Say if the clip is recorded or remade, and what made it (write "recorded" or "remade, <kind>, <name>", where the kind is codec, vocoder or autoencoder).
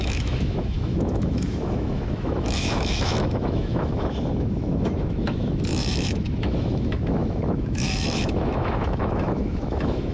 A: remade, autoencoder, DAC-VAE